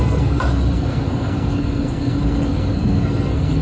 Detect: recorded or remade remade